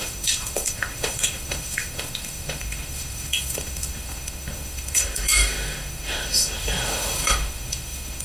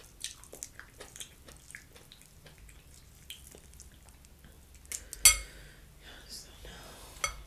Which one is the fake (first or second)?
first